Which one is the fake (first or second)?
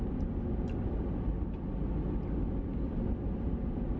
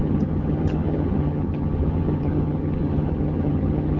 second